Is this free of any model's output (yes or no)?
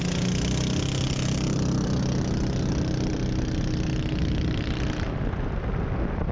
yes